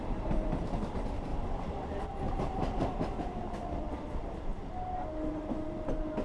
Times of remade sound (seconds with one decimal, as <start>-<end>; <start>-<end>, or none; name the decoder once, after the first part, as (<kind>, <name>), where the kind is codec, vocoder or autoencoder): 0.0-1.3 (vocoder, BigVGAN v2); 2.3-4.5; 5.3-6.2